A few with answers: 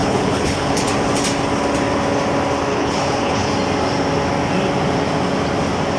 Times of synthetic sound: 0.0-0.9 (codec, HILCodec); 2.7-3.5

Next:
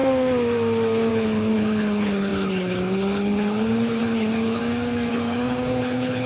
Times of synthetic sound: 1.1-4.6 (codec, HILCodec); 5.1-6.3

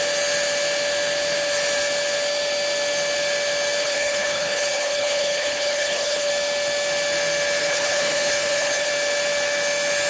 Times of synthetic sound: 3.8-6.3 (codec, HILCodec); 7.6-8.9

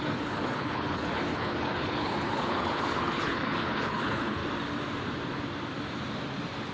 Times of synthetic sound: 0.0-4.4 (codec, HILCodec)

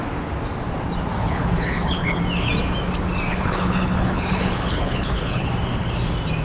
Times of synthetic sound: 1.2-2.2 (codec, HILCodec); 3.3-5.5

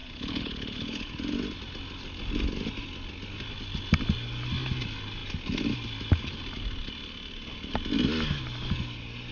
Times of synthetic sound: 0.0-1.1 (codec, HILCodec)